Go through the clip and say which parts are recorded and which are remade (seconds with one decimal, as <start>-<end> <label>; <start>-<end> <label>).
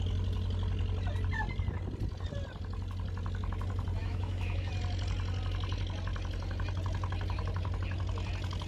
0.0-4.0 recorded; 4.0-4.7 remade; 4.7-8.7 recorded